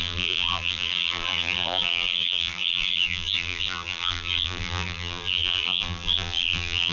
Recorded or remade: remade